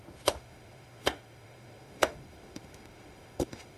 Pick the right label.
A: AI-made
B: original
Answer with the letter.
A